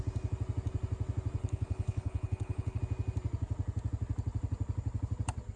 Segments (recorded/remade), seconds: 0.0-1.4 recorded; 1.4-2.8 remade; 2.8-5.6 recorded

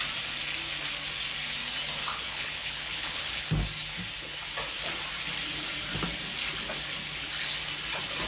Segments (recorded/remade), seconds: 0.0-2.0 recorded; 2.0-3.4 remade; 3.4-8.3 recorded

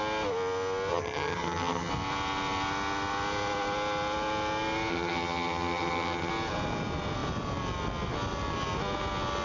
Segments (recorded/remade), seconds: 0.0-0.9 recorded; 0.9-1.9 remade; 1.9-4.9 recorded; 4.9-6.3 remade; 6.3-9.4 recorded

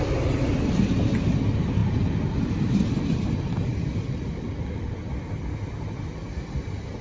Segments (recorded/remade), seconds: 0.0-1.8 recorded; 1.8-3.2 remade; 3.2-3.7 recorded; 3.7-5.7 remade; 5.7-7.0 recorded